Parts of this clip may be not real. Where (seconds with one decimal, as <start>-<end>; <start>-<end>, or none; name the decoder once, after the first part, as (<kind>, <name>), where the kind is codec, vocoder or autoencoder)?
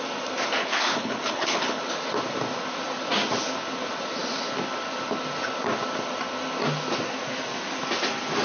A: 0.6-1.8 (codec, HILCodec)